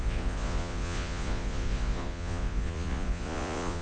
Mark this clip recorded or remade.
remade